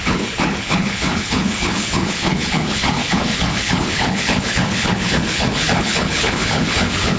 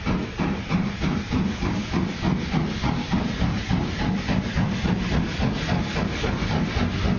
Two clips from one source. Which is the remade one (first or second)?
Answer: first